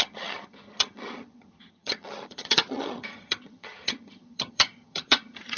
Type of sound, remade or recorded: remade